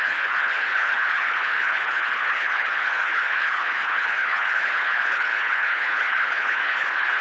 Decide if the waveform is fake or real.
fake